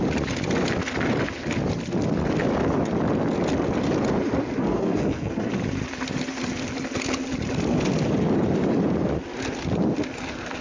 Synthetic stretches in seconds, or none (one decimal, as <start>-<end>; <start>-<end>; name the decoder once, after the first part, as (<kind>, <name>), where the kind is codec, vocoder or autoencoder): 4.6-5.5 (codec, SNAC)